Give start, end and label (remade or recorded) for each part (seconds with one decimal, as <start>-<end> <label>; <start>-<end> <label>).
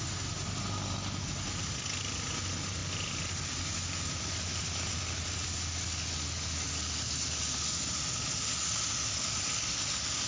0.0-2.8 recorded; 2.8-5.0 remade; 5.0-10.3 recorded